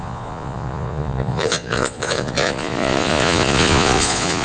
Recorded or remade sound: remade